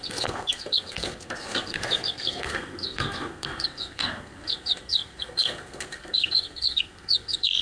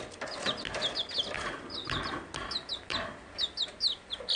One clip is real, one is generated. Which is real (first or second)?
second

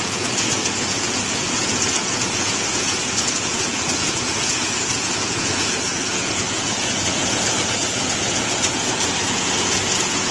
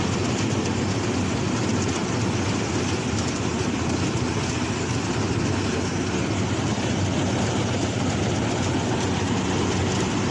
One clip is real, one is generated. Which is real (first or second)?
second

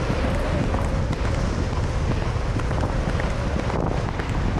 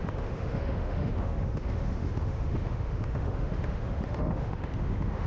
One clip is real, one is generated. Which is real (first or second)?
first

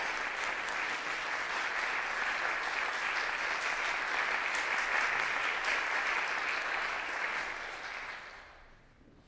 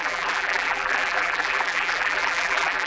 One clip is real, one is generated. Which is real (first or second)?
first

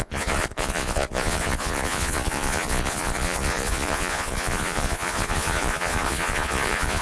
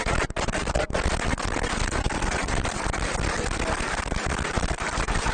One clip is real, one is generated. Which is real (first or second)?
second